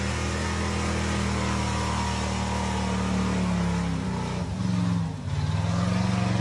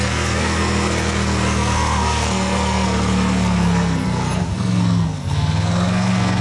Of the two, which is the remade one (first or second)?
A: second